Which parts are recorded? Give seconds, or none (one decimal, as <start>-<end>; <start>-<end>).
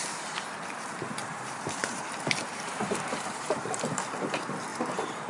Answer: 0.0-1.2; 3.6-4.7